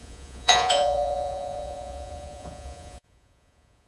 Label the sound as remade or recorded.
remade